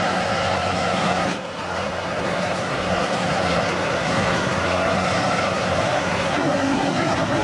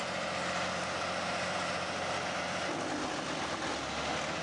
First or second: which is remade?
first